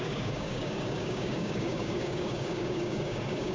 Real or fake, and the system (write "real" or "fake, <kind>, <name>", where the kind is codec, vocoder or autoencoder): fake, codec, DAC